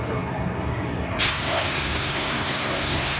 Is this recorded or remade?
remade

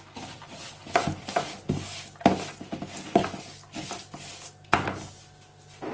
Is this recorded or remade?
recorded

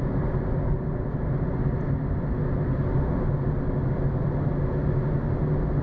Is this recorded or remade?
recorded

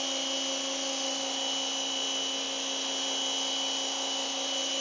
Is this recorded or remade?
recorded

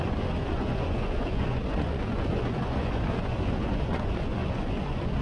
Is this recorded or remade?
remade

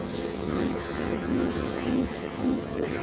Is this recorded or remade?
remade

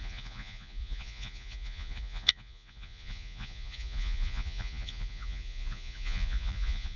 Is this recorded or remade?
remade